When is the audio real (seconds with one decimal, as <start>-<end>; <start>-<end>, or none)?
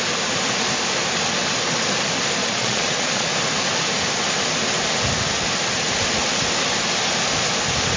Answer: 0.0-2.4; 3.3-8.0